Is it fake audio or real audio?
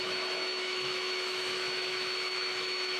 fake